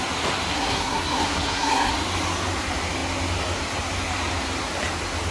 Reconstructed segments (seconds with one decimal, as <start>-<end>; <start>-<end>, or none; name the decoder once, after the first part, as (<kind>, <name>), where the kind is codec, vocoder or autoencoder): 0.5-1.9 (codec, SNAC)